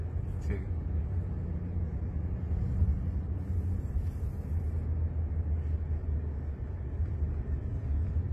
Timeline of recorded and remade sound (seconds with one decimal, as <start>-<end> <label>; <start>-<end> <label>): 0.0-8.3 recorded